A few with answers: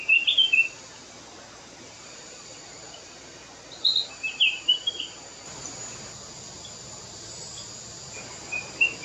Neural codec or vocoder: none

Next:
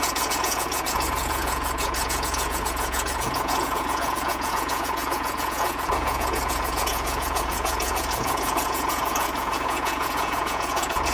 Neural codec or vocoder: vocoder, Vocos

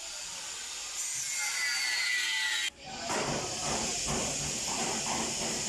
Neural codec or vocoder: none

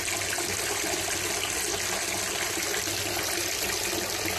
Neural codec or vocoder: none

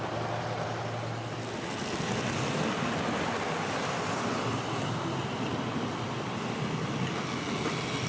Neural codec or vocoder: none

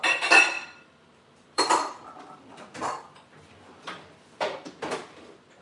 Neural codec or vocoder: vocoder, BigVGAN v2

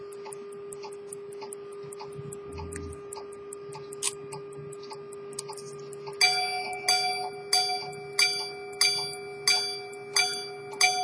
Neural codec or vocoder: none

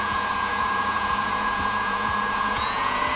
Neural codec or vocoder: vocoder, Vocos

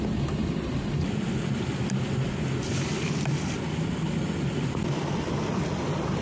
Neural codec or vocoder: none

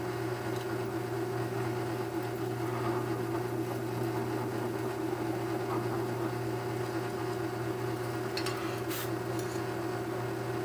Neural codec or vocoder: none